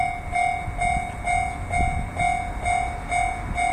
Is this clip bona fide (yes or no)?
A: yes